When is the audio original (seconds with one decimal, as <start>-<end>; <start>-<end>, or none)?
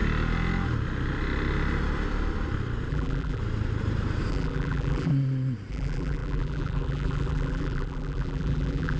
0.0-2.9; 3.4-4.3; 5.1-5.7